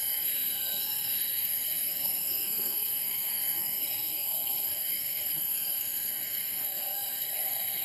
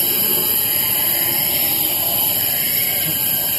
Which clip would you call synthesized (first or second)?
first